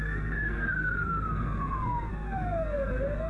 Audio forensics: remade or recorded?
remade